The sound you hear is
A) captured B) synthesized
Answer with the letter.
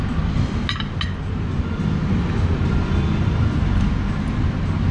A